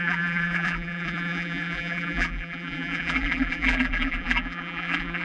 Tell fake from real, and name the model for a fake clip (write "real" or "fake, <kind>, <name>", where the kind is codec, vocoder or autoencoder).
fake, vocoder, BigVGAN v2